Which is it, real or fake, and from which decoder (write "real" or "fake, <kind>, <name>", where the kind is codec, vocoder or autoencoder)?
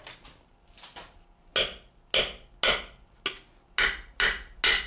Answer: real